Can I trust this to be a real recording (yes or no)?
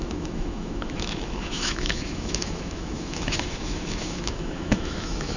no